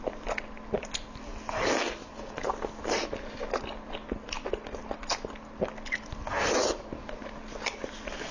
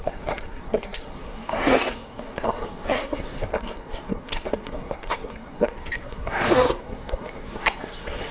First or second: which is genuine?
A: first